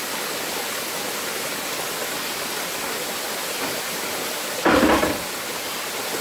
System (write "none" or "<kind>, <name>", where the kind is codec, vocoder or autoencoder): none